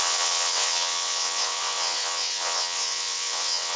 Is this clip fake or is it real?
fake